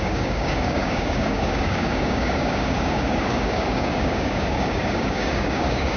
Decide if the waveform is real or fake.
fake